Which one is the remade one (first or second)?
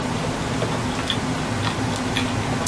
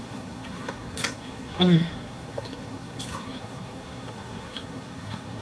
second